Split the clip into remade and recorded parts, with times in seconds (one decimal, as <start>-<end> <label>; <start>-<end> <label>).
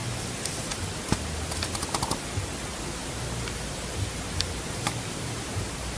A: 0.0-0.8 remade; 0.8-3.0 recorded; 3.0-6.0 remade